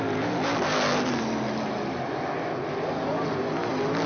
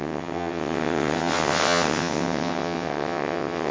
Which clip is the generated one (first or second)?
second